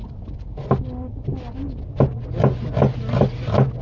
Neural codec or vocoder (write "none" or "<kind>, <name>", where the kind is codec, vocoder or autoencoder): none